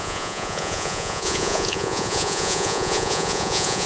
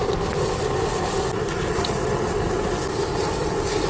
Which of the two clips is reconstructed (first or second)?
first